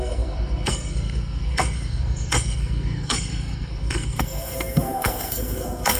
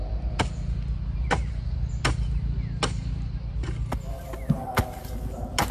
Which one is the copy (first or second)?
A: first